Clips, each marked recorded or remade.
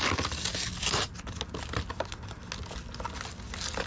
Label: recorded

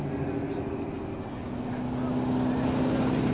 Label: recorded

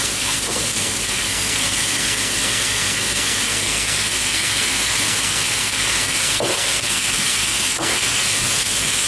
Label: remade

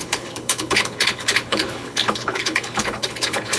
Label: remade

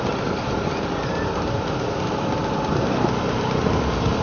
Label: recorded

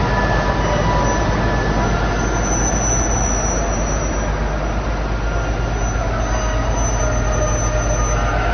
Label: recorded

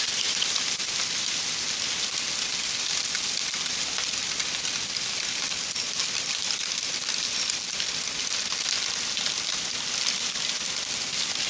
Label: recorded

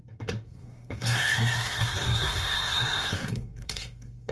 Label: remade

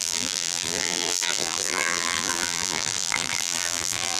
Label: remade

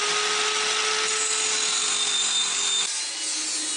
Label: recorded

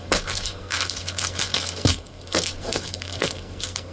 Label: remade